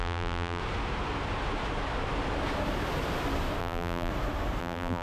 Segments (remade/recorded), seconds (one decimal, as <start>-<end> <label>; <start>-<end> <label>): 0.0-0.6 remade; 0.6-3.6 recorded; 3.6-4.1 remade; 4.1-4.6 recorded; 4.6-5.0 remade